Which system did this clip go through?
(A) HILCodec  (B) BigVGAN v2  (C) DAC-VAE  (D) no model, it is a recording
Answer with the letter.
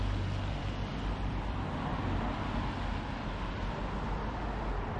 D